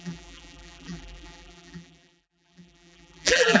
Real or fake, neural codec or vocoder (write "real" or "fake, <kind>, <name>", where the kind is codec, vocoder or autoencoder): fake, vocoder, BigVGAN v2